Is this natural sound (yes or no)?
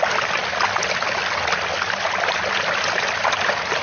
yes